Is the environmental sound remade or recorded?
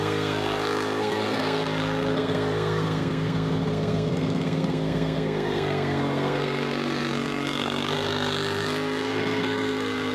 remade